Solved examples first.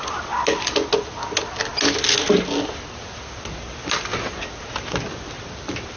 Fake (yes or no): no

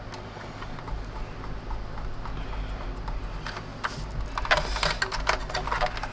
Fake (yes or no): no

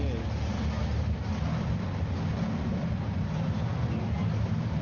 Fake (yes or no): no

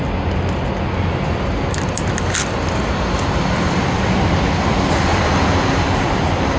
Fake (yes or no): no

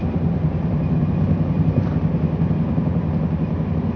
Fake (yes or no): no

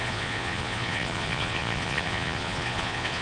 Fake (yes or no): yes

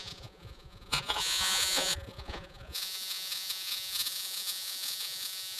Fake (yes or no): yes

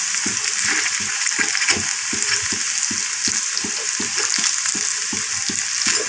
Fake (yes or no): no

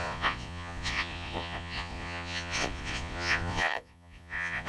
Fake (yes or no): yes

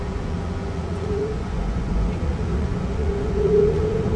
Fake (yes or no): yes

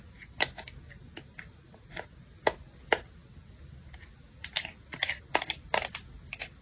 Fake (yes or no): no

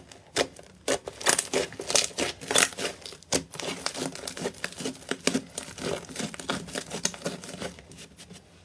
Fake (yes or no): no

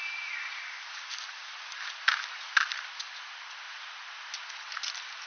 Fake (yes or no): no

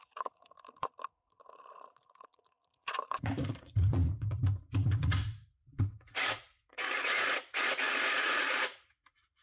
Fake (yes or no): yes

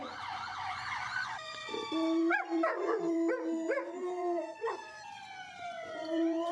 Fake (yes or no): yes